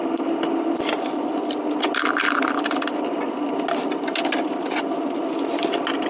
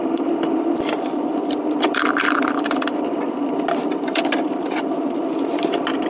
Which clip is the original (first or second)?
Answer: first